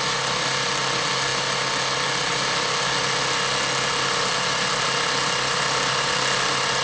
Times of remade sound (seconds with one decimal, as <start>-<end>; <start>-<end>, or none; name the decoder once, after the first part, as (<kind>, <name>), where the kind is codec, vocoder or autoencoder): none